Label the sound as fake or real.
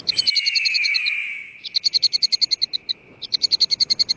real